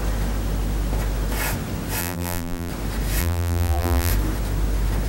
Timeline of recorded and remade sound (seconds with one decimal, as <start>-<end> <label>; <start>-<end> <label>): 0.0-2.0 recorded; 2.0-2.7 remade; 2.7-3.2 recorded; 3.2-4.1 remade; 4.1-5.1 recorded